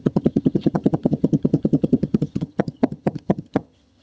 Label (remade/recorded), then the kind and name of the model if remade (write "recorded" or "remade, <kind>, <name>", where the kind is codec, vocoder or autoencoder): remade, vocoder, HiFi-GAN